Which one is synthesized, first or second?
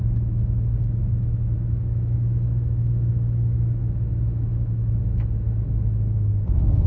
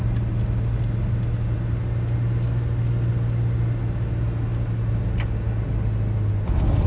first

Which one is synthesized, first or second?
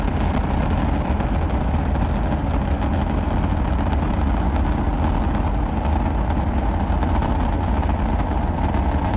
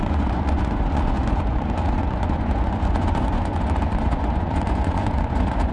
second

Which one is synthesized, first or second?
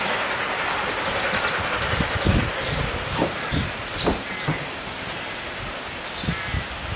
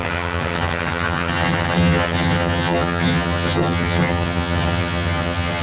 second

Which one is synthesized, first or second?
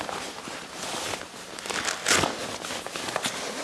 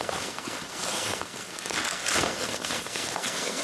second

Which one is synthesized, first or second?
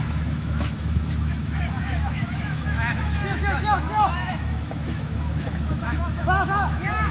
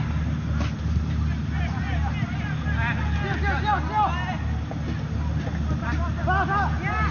first